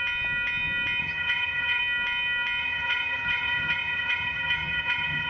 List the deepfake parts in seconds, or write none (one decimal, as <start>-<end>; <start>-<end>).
1.0-1.8; 2.6-5.3